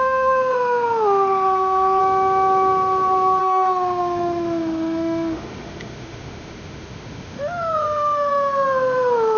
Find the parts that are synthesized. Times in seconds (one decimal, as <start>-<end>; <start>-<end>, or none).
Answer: 0.0-2.0; 3.4-9.4